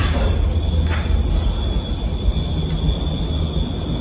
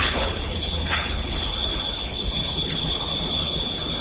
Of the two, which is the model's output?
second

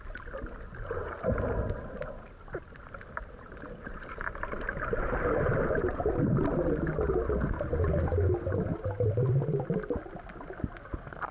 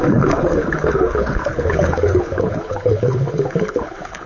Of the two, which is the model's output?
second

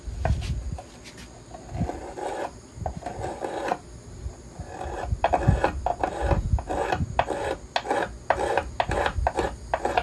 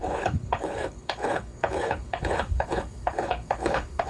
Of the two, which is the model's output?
second